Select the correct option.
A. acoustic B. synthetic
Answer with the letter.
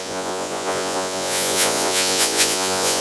B